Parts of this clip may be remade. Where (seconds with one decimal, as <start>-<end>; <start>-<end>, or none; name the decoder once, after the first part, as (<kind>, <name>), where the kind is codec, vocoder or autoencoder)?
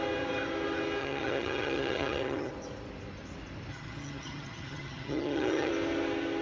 1.0-2.5 (vocoder, HiFi-GAN); 3.7-5.7